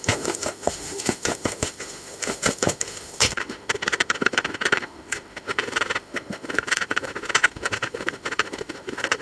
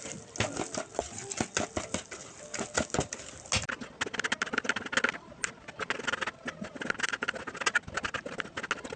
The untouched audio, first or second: second